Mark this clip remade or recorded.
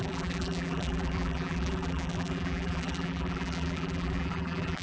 remade